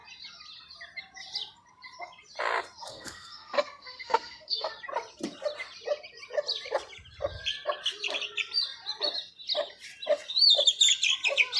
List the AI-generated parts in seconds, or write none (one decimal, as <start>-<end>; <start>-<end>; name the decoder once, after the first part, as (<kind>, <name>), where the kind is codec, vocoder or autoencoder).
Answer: 2.9-4.7 (codec, SNAC)